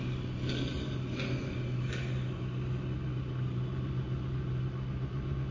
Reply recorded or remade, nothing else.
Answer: recorded